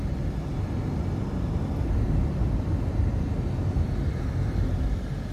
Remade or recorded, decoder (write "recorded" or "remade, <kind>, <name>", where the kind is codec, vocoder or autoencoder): recorded